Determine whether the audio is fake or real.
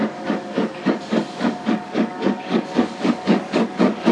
fake